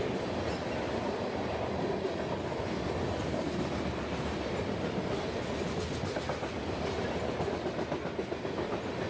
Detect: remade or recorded recorded